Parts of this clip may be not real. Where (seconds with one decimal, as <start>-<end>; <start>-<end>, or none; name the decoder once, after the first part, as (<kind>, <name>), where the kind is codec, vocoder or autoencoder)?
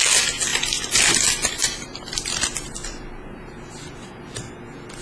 0.5-3.5 (vocoder, BigVGAN v2)